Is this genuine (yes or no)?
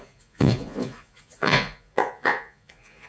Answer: no